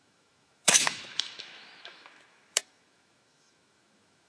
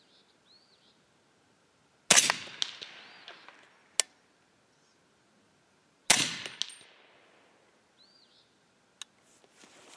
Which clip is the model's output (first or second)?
first